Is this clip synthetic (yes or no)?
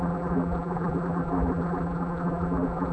yes